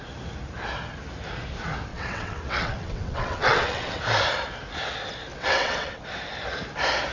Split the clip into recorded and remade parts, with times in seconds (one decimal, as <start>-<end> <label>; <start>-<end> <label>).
0.0-1.9 recorded; 1.9-4.0 remade; 4.0-5.3 recorded; 5.3-6.0 remade; 6.0-7.1 recorded